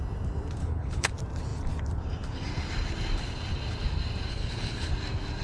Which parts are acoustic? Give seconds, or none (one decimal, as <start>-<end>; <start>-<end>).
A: 0.0-0.6; 1.1-4.3; 4.9-5.4